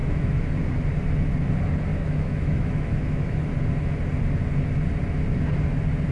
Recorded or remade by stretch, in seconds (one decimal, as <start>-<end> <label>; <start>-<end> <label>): 0.0-0.5 remade; 0.5-1.9 recorded; 1.9-3.5 remade; 3.5-6.1 recorded